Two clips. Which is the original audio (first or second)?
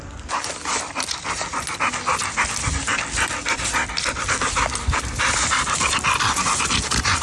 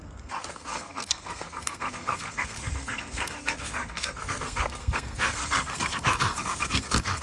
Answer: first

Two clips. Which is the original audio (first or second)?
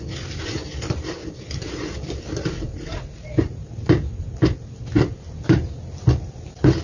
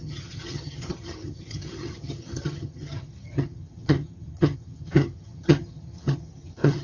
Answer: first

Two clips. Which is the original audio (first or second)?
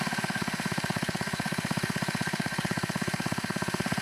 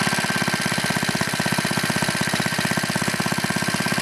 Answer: second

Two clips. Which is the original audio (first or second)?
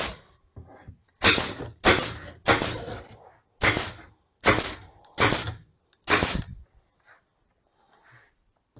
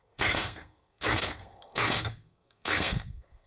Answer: first